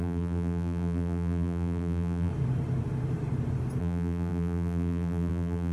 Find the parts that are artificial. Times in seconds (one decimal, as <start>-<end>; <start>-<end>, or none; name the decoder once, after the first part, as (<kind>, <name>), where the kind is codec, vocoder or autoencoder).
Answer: 0.0-2.3 (vocoder, BigVGAN v2); 3.8-5.7